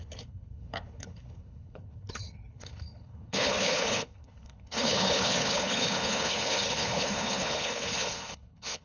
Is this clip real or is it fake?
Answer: fake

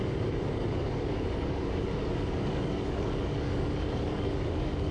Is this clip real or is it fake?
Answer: fake